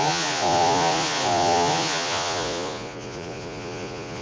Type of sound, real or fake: fake